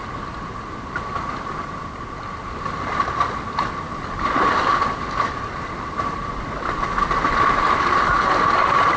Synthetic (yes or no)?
no